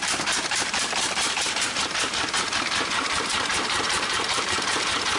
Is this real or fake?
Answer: fake